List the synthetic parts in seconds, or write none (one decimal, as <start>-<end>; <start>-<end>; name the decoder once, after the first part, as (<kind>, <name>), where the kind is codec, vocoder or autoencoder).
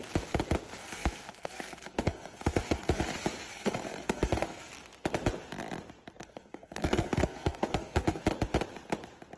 0.8-3.0 (codec, SNAC); 3.5-4.7; 6.2-8.2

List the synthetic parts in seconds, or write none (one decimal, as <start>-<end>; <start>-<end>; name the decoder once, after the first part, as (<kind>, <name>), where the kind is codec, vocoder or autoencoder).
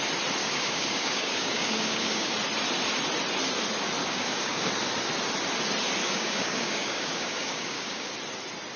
0.4-2.3 (codec, DAC); 4.0-4.7; 6.0-8.1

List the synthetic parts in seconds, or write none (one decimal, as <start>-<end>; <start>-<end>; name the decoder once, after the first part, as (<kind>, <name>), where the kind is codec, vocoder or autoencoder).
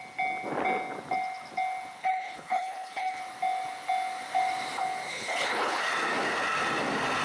2.0-3.2 (codec, HILCodec); 5.1-5.8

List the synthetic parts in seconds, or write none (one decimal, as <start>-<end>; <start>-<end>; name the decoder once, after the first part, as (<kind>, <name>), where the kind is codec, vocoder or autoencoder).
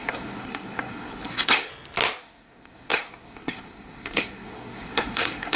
0.0-1.7 (codec, SNAC); 2.2-5.6